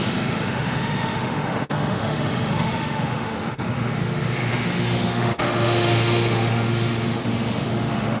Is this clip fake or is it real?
fake